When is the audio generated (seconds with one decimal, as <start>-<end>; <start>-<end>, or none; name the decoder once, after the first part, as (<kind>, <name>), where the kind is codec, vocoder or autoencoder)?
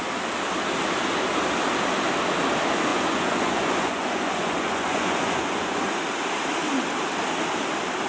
2.9-6.0 (vocoder, Vocos)